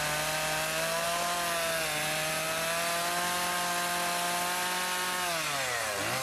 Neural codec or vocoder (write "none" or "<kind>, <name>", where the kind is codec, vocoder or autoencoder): none